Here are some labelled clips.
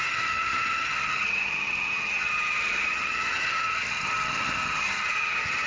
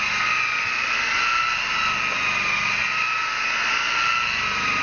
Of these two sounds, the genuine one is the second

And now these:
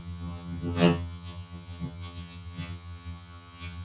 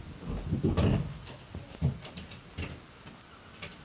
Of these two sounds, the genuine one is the second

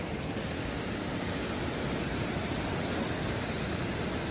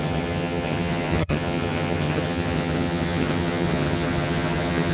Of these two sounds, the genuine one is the first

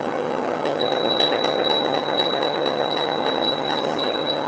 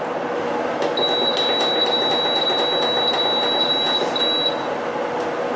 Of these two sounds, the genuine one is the second